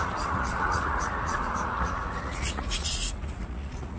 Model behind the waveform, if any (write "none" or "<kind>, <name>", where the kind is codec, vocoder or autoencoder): vocoder, Vocos